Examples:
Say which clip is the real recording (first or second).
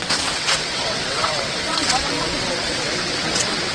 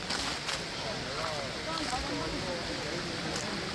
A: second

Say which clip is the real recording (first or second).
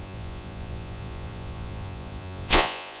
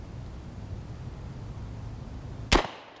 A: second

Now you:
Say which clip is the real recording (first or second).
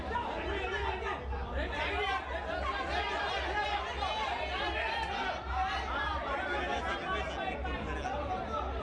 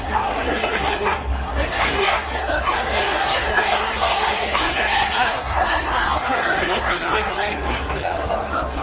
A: first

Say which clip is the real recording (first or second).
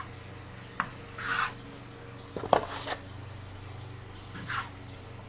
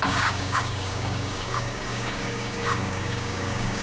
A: first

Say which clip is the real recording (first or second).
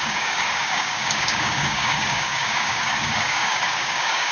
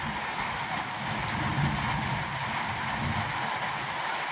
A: second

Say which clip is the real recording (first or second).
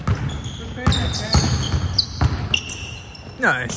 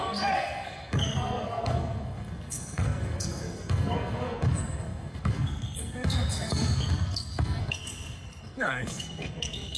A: first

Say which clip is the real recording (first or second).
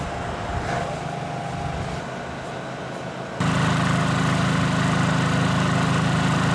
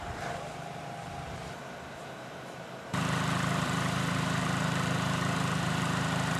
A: first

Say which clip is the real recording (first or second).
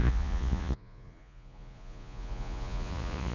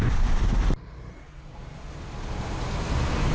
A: second